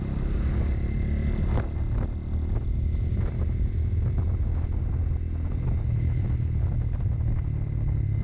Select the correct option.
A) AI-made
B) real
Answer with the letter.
B